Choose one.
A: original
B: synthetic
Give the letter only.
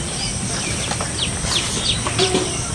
A